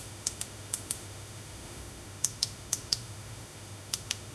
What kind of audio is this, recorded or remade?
remade